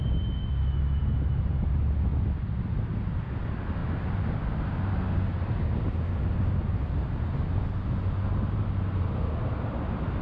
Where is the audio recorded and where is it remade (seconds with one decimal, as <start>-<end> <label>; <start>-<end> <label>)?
0.0-0.4 recorded; 0.4-1.0 remade; 1.0-10.2 recorded